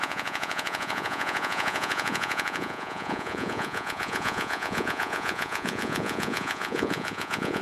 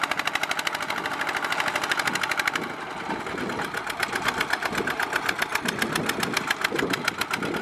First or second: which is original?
second